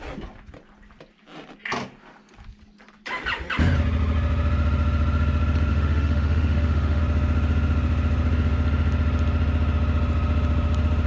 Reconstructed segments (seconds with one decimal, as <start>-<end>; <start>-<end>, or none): 5.7-7.0